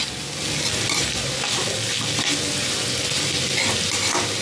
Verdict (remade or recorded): recorded